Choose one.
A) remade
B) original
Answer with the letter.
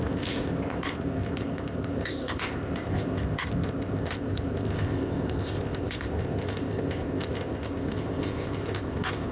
A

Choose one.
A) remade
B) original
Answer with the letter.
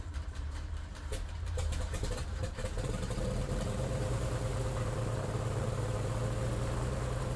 A